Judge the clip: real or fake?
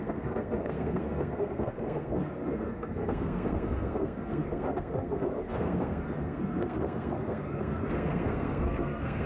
fake